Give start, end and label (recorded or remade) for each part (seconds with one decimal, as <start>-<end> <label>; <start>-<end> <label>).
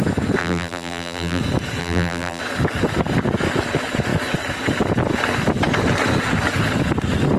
0.0-0.4 recorded; 0.4-1.4 remade; 1.4-1.8 recorded; 1.8-2.4 remade; 2.4-7.4 recorded